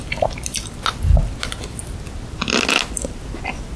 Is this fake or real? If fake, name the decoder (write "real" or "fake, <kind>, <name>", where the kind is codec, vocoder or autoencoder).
real